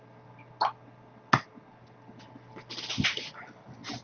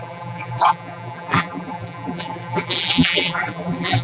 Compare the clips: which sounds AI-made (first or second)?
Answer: second